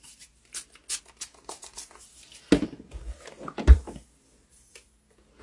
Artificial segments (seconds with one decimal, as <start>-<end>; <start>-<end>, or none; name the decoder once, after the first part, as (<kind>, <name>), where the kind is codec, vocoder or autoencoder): none